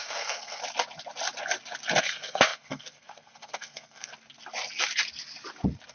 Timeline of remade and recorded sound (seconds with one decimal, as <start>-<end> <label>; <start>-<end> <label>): 0.0-0.6 remade; 0.6-2.0 recorded; 2.0-4.1 remade; 4.1-5.9 recorded